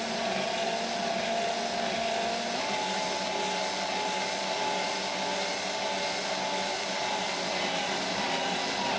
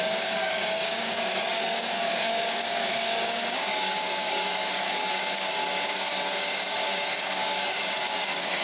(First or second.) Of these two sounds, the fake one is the second